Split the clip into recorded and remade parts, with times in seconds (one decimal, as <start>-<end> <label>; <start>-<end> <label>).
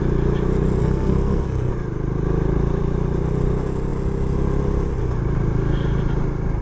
0.0-0.8 recorded; 0.8-1.7 remade; 1.7-6.6 recorded